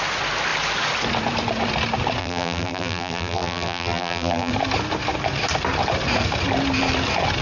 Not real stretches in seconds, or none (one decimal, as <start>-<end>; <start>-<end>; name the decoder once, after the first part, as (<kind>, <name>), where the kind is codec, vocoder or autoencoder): 2.2-4.5 (vocoder, BigVGAN v2)